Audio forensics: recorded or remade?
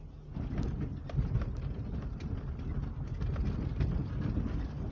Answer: recorded